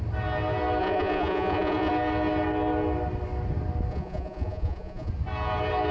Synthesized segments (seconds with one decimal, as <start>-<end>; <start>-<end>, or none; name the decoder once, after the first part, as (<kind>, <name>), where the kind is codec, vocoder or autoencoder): 0.8-1.9 (vocoder, Vocos); 3.9-5.1